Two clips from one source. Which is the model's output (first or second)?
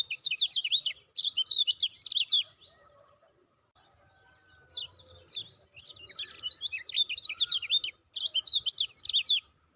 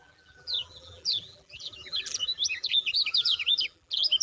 second